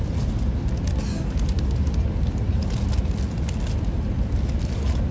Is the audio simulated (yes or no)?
no